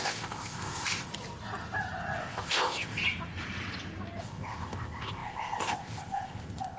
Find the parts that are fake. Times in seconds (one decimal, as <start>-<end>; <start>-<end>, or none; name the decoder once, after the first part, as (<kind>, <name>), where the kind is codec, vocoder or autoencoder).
0.0-1.1 (codec, ZipCodec); 2.2-3.0; 4.2-6.8